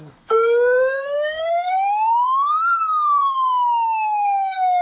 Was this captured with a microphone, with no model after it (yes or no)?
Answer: no